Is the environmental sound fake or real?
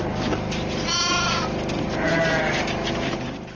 real